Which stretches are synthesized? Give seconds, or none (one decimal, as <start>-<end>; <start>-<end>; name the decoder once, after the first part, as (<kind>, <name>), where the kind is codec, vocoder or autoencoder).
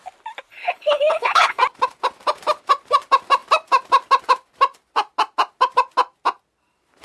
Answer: 0.5-1.6 (codec, HILCodec)